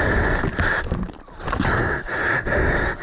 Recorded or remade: recorded